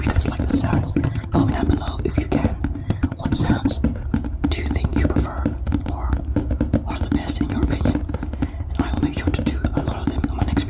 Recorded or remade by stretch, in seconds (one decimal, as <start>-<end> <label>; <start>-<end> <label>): 0.0-0.5 recorded; 0.5-1.5 remade; 1.5-2.8 recorded; 2.8-3.7 remade; 3.7-10.7 recorded